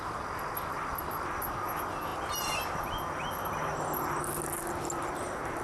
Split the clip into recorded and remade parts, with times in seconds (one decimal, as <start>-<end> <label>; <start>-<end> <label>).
0.0-5.6 recorded